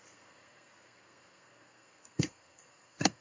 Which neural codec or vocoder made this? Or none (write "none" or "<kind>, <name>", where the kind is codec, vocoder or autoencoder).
codec, SNAC